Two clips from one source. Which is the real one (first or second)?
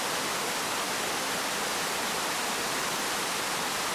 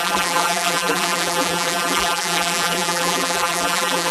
first